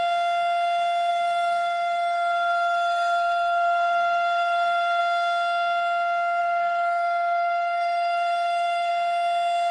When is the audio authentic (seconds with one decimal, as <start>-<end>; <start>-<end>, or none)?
0.0-1.1; 5.0-6.4; 8.9-9.7